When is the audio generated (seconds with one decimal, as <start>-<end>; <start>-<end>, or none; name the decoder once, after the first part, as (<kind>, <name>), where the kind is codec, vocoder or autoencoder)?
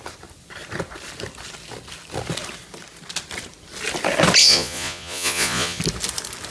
4.4-5.8 (vocoder, Vocos)